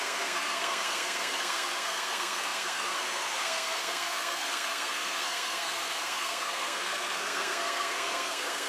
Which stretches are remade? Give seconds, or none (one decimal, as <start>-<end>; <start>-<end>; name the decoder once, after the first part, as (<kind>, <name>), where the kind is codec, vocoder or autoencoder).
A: 0.0-8.7 (codec, SNAC)